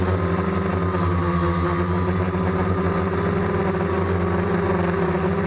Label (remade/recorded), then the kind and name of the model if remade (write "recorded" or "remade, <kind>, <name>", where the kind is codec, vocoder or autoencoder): recorded